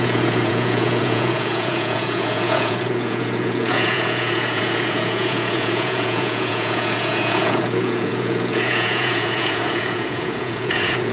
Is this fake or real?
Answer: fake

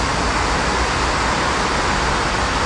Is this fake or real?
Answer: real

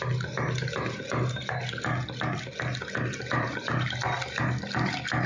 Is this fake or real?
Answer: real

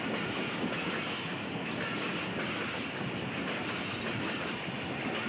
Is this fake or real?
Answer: real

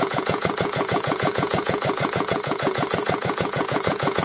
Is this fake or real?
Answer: fake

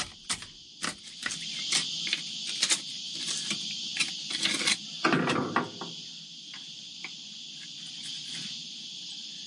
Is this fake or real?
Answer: real